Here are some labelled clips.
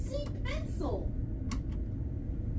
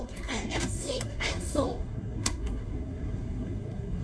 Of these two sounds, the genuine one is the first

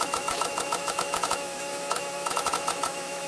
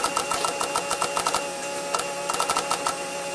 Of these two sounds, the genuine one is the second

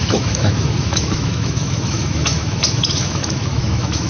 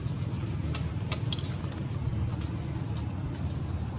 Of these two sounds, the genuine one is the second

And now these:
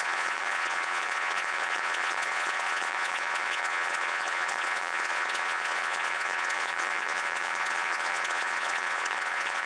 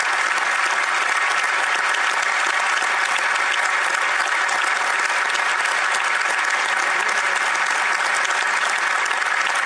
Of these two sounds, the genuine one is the second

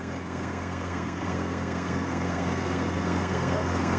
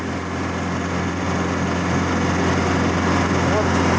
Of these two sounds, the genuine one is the second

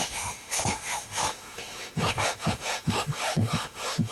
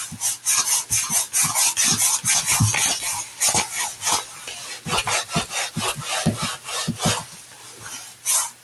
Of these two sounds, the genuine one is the second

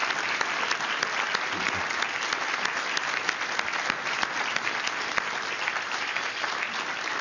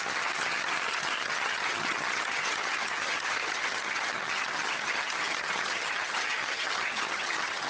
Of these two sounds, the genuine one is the first